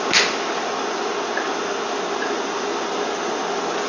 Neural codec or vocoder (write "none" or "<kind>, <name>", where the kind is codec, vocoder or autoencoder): none